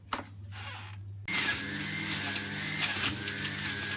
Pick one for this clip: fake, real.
real